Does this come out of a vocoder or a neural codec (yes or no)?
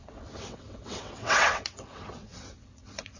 yes